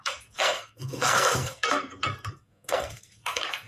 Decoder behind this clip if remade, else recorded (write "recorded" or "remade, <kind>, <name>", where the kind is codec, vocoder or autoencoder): remade, codec, SNAC